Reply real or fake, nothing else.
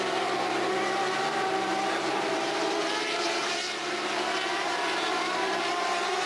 fake